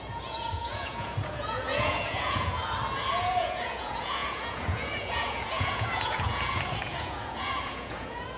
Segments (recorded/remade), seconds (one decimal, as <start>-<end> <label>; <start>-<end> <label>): 0.0-2.6 remade; 2.6-3.1 recorded; 3.1-8.4 remade

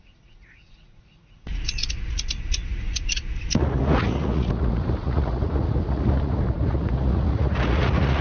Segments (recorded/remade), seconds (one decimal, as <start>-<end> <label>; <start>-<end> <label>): 0.0-8.2 remade

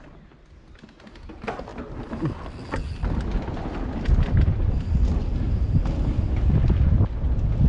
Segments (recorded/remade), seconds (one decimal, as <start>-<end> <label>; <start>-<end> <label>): 0.0-7.7 recorded

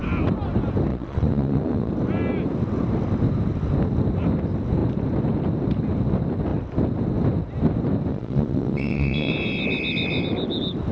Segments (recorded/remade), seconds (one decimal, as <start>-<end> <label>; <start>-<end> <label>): 0.0-0.9 recorded; 0.9-1.9 remade; 1.9-8.1 recorded; 8.1-9.3 remade; 9.3-10.9 recorded

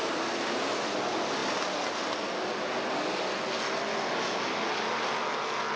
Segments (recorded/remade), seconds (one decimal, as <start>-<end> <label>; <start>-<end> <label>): 0.0-5.8 recorded

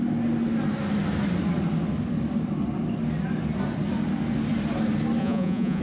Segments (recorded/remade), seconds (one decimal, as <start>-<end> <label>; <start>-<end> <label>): 0.0-5.2 recorded; 5.2-5.8 remade